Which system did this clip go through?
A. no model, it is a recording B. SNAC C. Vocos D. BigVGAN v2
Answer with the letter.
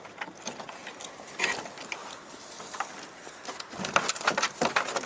A